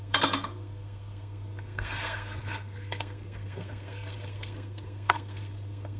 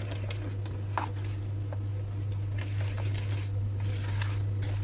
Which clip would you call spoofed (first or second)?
first